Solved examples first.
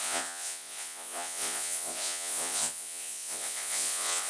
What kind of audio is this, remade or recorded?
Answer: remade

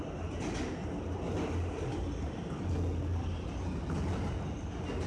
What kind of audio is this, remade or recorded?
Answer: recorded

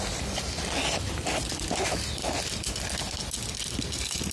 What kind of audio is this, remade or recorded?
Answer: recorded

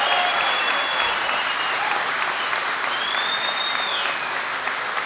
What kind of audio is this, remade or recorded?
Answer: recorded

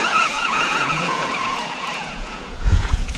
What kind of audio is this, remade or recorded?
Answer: remade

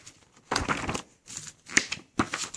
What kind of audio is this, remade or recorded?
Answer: recorded